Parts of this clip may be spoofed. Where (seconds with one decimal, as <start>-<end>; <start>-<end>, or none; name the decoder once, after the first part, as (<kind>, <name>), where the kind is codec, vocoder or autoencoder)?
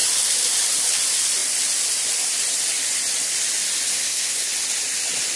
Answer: 3.9-4.5 (codec, SNAC)